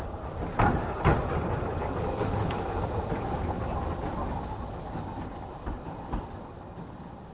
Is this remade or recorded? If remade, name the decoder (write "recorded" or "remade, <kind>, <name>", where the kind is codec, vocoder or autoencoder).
recorded